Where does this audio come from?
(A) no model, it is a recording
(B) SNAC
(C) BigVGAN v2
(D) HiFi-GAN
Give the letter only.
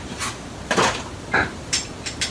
A